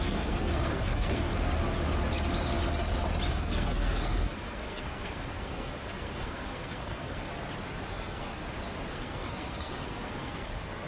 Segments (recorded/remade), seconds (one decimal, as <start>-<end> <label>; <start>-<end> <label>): 0.0-1.3 remade; 1.3-3.3 recorded; 3.3-7.3 remade; 7.3-7.9 recorded; 7.9-8.4 remade; 8.4-8.9 recorded; 8.9-10.9 remade